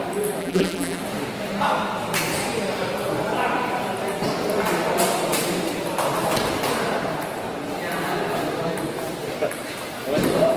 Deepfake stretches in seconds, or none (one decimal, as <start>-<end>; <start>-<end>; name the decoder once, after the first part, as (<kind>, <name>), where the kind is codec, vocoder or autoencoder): 0.4-1.0 (vocoder, BigVGAN v2)

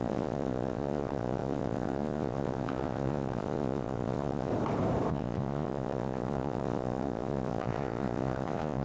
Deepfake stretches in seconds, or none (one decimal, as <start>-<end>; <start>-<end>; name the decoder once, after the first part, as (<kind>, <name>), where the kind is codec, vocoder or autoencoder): 0.0-4.5 (vocoder, Vocos); 5.1-8.8

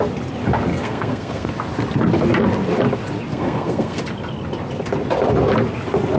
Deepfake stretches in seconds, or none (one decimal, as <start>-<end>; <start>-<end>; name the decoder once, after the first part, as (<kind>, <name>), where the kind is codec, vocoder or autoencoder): 0.7-1.5 (codec, SNAC); 3.3-4.0

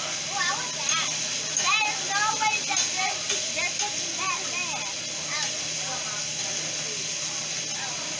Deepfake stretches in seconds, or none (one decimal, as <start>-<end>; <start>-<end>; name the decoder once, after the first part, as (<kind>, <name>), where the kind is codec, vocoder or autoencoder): none

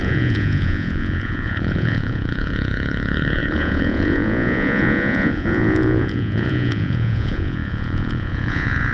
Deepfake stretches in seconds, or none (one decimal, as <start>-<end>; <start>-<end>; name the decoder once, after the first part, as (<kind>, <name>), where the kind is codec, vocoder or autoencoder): 0.0-8.9 (vocoder, Vocos)

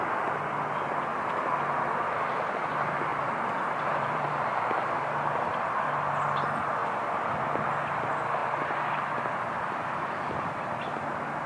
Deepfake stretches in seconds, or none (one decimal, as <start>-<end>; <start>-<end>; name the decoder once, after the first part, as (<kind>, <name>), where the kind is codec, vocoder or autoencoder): 3.1-4.3 (vocoder, BigVGAN v2); 6.8-7.4

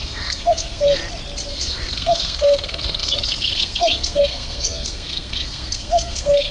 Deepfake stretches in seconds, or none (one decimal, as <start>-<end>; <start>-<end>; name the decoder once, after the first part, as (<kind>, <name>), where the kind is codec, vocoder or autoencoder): 0.0-1.0 (codec, SNAC); 1.5-6.5